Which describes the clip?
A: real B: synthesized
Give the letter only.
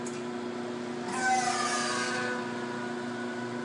A